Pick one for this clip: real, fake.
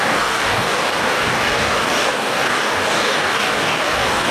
fake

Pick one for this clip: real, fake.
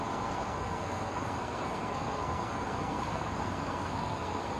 fake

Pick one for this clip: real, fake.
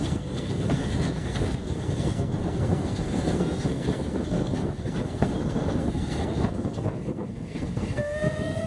fake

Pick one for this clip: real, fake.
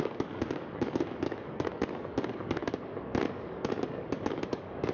fake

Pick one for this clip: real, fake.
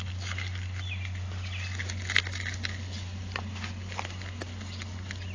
real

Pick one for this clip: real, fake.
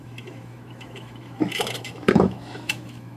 fake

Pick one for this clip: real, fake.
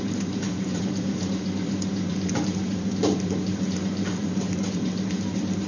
fake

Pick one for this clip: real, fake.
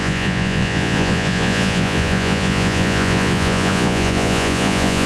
fake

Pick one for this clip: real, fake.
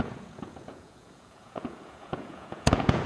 fake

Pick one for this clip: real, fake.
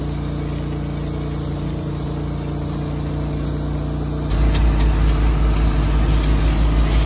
real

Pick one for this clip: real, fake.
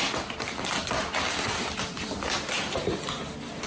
real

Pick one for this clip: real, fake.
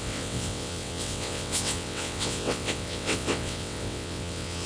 fake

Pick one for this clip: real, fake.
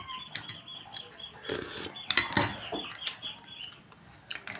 real